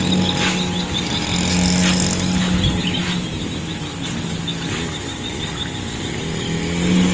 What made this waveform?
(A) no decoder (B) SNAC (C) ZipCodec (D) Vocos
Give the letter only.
A